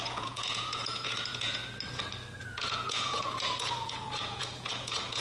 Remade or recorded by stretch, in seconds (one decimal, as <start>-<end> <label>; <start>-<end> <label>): 0.0-1.6 remade; 1.6-2.4 recorded; 2.4-5.2 remade